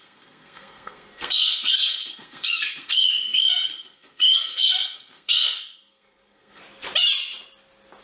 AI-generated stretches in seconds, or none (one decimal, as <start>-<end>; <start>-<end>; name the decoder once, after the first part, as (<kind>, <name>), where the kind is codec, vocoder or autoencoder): 0.0-6.6 (codec, SNAC)